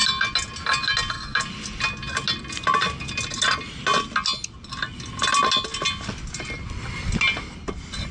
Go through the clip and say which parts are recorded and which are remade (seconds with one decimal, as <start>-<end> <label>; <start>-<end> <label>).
0.0-8.1 recorded